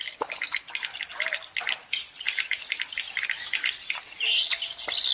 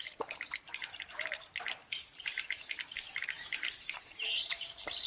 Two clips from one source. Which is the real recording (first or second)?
first